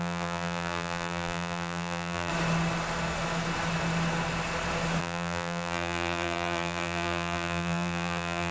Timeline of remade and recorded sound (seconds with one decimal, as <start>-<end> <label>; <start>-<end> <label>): 0.0-2.3 remade; 2.3-5.0 recorded; 5.0-8.5 remade